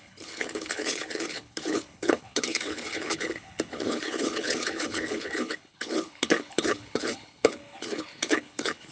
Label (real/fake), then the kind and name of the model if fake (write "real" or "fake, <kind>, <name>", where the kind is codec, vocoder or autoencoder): fake, codec, HILCodec